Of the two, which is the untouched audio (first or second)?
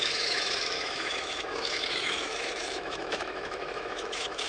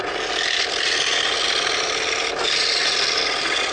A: second